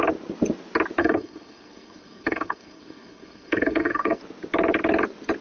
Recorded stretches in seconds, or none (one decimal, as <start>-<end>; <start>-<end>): 0.0-1.0; 4.2-5.4